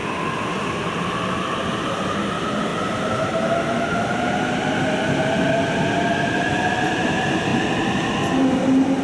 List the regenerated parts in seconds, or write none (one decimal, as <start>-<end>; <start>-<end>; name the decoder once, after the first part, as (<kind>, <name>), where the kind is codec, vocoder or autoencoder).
none